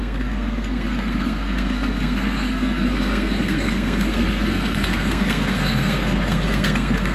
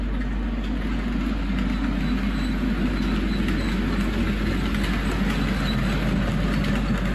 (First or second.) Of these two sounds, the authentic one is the second